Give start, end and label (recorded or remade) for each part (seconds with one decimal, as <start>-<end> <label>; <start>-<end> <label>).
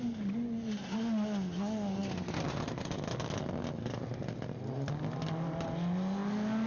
0.0-6.7 recorded